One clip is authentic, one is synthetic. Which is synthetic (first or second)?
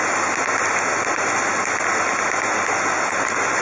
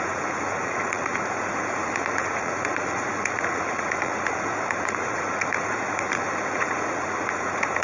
second